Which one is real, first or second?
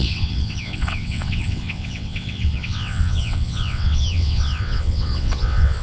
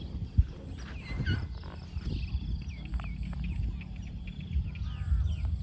second